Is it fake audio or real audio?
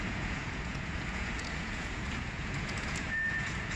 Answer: fake